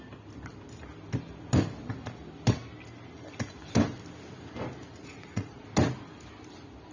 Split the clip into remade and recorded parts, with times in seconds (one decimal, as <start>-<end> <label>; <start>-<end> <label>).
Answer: 0.0-5.0 recorded; 5.0-5.6 remade; 5.6-6.9 recorded